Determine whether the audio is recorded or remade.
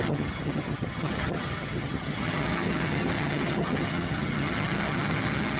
remade